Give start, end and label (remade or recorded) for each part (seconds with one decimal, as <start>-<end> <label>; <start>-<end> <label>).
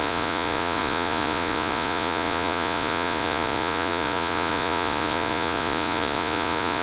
0.0-6.8 remade